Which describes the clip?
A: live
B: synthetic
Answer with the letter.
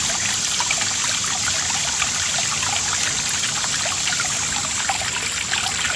A